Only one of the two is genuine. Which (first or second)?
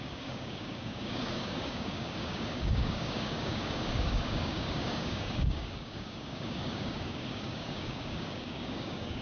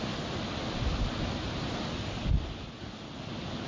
second